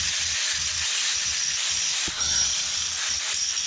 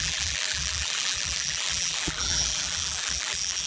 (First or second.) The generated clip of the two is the second